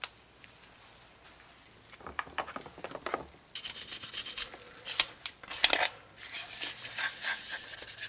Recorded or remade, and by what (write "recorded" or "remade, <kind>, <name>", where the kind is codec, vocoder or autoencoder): recorded